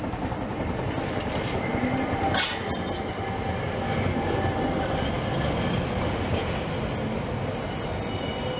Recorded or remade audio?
recorded